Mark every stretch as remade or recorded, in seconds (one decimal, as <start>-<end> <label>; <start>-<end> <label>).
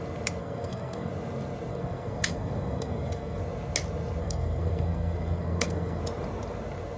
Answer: 0.0-0.4 recorded; 0.4-1.1 remade; 1.1-1.7 recorded; 1.7-3.4 remade; 3.4-4.2 recorded; 4.2-6.0 remade; 6.0-7.0 recorded